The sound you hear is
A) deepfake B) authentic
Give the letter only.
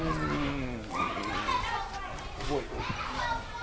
B